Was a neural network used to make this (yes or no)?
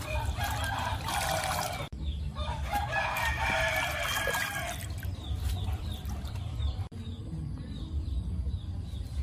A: yes